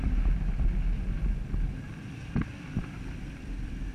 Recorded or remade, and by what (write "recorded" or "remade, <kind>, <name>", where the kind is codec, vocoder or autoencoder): recorded